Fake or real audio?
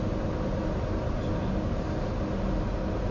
real